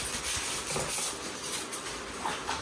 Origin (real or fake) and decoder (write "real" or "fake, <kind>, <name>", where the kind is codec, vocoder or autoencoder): real